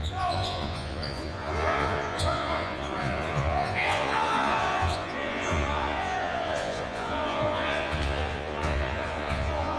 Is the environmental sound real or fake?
fake